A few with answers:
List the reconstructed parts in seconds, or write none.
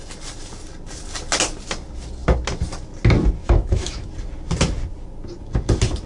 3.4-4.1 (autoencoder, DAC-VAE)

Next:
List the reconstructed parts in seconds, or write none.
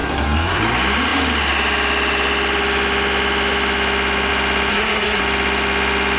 0.0-0.6 (codec, SNAC); 4.7-5.2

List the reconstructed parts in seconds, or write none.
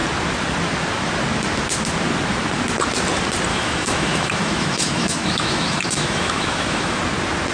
3.5-7.0 (autoencoder, DAC-VAE)